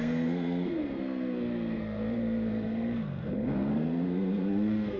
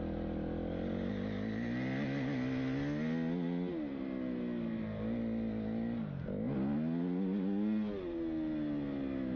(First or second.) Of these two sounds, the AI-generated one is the first